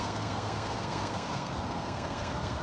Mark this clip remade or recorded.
remade